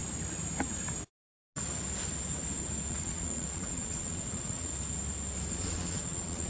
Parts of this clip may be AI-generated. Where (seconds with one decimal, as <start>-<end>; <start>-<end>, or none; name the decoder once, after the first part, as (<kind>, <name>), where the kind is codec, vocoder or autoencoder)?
2.9-4.7 (vocoder, Vocos); 5.5-6.5